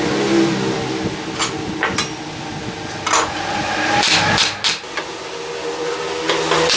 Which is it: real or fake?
real